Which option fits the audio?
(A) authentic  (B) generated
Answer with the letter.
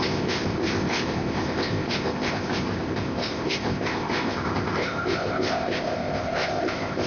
B